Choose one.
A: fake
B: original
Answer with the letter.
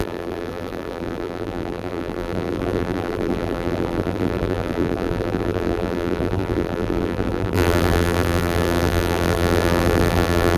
A